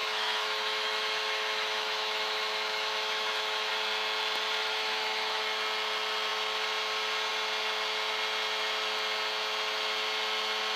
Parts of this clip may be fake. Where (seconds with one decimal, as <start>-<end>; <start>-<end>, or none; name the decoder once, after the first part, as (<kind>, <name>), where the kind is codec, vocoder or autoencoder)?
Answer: 0.0-3.7 (autoencoder, DAC-VAE); 4.6-5.4

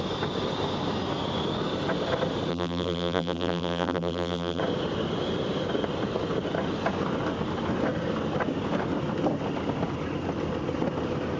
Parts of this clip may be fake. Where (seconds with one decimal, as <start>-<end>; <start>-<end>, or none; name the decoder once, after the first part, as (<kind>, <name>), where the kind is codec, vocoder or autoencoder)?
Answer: 2.5-4.6 (vocoder, BigVGAN v2)